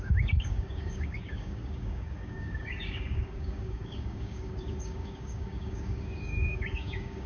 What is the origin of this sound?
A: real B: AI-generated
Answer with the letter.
B